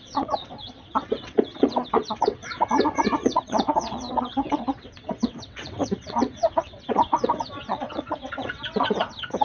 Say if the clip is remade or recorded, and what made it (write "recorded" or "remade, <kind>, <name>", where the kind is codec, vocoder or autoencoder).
remade, vocoder, WaveNeXt